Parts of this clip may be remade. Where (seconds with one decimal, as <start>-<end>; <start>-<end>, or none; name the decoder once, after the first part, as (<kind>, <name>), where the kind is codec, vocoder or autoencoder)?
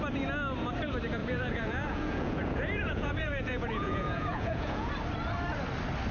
1.2-4.9 (vocoder, Vocos)